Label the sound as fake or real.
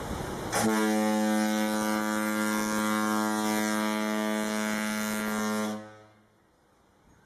real